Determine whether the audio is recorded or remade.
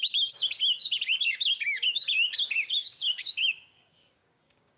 remade